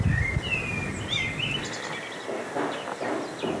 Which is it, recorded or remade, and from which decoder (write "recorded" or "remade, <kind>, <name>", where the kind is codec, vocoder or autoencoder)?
recorded